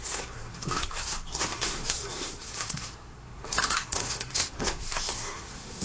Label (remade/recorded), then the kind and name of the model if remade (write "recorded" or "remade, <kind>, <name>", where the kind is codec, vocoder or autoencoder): remade, codec, SNAC